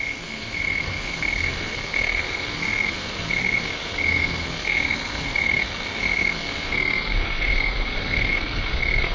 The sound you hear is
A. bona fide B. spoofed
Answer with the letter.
B